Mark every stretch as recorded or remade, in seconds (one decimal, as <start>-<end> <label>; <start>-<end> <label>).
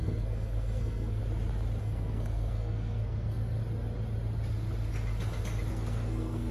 0.0-1.2 remade; 1.2-1.8 recorded; 1.8-3.6 remade; 3.6-5.7 recorded; 5.7-6.5 remade